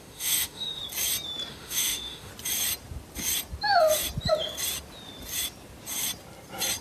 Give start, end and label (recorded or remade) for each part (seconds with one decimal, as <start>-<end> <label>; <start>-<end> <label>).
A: 0.0-0.8 remade; 0.8-1.5 recorded; 1.5-2.3 remade; 2.3-6.8 recorded